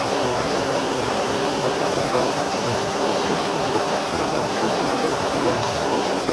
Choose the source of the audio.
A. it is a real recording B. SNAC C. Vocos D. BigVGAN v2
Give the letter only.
B